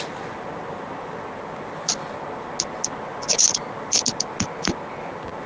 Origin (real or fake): real